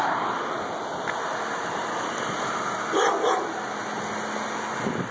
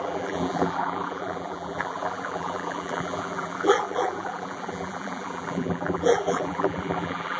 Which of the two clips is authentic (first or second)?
first